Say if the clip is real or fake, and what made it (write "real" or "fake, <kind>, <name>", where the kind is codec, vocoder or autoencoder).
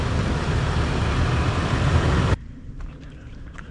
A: real